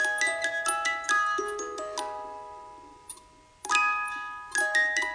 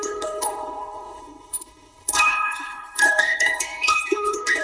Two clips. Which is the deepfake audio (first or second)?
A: second